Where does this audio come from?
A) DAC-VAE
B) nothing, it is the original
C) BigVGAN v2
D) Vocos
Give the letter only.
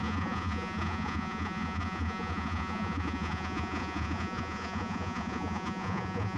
D